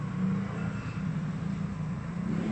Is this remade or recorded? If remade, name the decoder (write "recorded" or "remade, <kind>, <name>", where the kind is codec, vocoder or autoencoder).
recorded